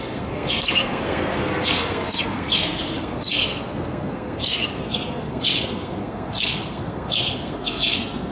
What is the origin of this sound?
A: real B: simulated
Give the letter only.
B